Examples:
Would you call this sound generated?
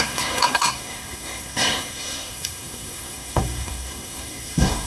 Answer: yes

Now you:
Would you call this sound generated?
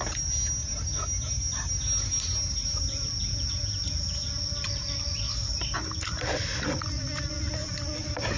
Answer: no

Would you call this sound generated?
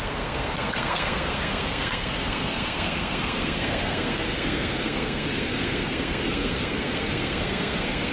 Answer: yes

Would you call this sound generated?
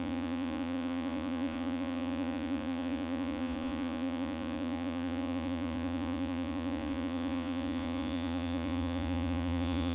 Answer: yes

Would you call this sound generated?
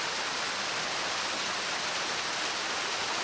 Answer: no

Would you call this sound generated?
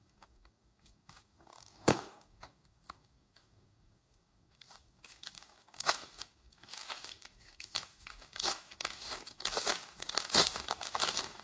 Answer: yes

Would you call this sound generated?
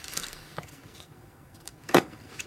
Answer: yes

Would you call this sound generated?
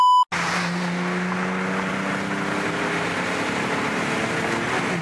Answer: no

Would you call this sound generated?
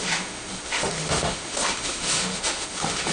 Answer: yes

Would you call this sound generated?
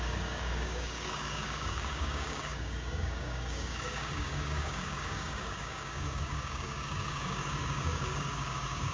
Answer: yes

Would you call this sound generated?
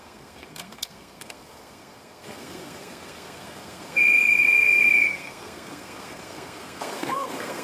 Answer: yes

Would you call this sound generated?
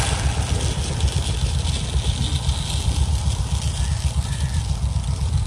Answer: no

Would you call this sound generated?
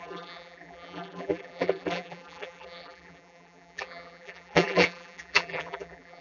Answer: yes